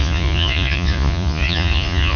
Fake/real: fake